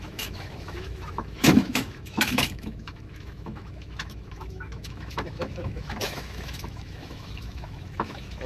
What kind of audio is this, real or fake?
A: fake